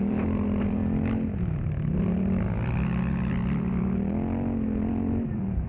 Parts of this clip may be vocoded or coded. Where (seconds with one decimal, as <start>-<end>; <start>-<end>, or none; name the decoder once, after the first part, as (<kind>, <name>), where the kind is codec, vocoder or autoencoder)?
0.0-0.8 (vocoder, BigVGAN v2); 1.5-5.7